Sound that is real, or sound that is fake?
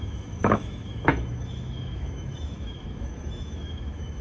fake